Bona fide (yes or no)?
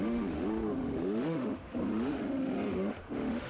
no